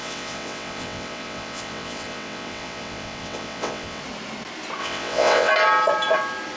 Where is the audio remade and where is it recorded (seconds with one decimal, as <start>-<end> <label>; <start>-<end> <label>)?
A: 0.0-4.0 remade; 4.0-4.8 recorded; 4.8-5.5 remade; 5.5-6.6 recorded

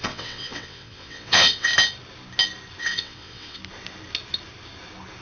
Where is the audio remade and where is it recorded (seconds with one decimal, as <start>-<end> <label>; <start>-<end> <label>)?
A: 0.0-1.7 remade; 1.7-2.8 recorded; 2.8-3.6 remade; 3.6-5.2 recorded

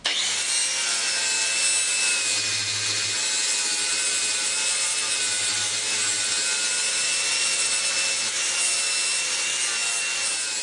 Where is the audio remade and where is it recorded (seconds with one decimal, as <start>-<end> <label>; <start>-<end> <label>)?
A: 0.0-10.6 recorded

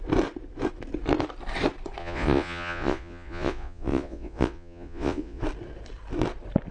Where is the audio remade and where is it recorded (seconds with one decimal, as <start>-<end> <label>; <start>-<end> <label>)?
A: 0.0-2.0 recorded; 2.0-5.4 remade; 5.4-6.7 recorded

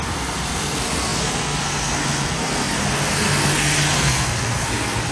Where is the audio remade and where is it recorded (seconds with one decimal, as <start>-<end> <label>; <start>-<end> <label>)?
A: 0.0-5.1 remade

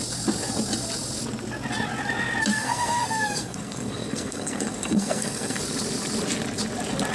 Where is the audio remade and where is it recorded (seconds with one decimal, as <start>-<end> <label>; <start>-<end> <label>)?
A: 0.0-2.5 recorded; 2.5-5.6 remade; 5.6-7.1 recorded